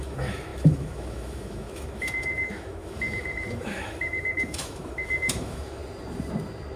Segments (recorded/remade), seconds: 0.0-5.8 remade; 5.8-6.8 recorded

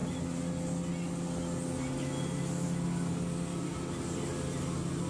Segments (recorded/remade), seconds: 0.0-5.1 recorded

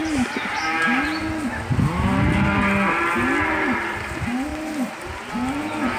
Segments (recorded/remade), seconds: 0.0-1.2 remade; 1.2-4.5 recorded; 4.5-5.3 remade; 5.3-6.0 recorded

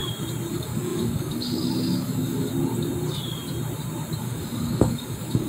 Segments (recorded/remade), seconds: 0.0-0.5 recorded; 0.5-2.5 remade; 2.5-4.2 recorded; 4.2-5.5 remade